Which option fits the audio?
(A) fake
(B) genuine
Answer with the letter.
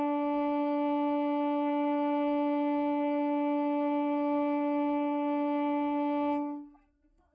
A